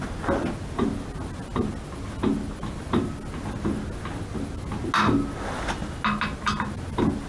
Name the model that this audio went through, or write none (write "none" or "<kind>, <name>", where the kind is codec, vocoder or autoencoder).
none